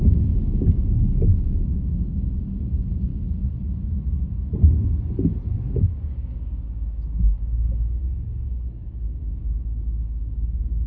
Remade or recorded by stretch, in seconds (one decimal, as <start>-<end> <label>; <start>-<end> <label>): 0.0-3.1 remade; 3.1-5.5 recorded; 5.5-10.9 remade

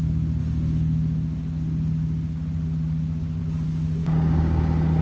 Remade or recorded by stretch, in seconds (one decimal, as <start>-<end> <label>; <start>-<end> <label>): 0.0-4.0 recorded; 4.0-4.6 remade; 4.6-5.0 recorded

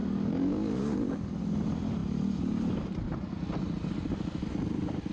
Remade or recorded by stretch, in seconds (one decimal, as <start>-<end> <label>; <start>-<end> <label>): 0.0-1.4 remade; 1.4-5.1 recorded

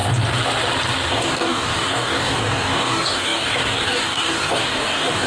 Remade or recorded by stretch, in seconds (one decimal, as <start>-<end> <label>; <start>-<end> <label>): 0.0-1.1 recorded; 1.1-5.3 remade

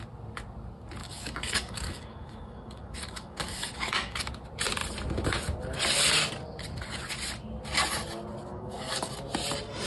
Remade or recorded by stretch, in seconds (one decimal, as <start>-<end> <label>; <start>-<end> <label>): 0.0-1.0 recorded; 1.0-4.3 remade; 4.3-8.5 recorded; 8.5-9.1 remade; 9.1-9.9 recorded

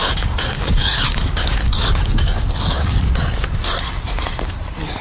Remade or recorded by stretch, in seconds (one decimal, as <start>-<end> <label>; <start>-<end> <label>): 0.0-3.0 remade; 3.0-5.0 recorded